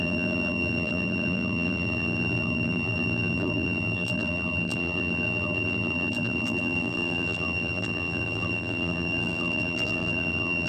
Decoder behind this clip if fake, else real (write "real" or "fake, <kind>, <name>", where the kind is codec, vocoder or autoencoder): fake, vocoder, BigVGAN v2